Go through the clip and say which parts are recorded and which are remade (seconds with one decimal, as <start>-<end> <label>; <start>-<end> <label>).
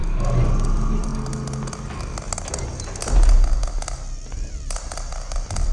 0.0-0.7 recorded; 0.7-1.1 remade; 1.1-4.5 recorded; 4.5-5.7 remade